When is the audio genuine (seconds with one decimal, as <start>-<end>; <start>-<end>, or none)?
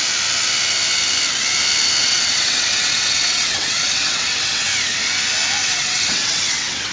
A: 0.0-2.0; 4.7-5.6